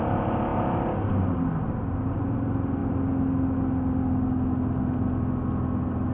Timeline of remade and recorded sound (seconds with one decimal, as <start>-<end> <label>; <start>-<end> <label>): 0.0-6.1 recorded